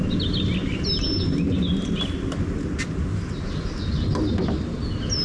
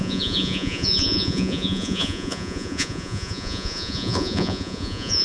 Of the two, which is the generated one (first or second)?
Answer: second